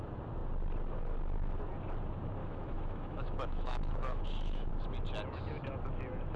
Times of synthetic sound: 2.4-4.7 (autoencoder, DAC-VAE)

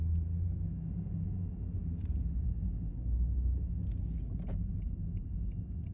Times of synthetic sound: none

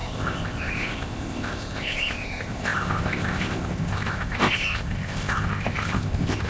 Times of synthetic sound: 0.0-6.5 (codec, ZipCodec)